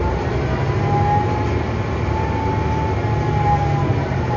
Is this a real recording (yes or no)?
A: yes